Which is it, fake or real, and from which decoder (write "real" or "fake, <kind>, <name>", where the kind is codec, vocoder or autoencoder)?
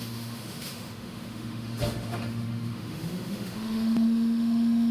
fake, autoencoder, DAC-VAE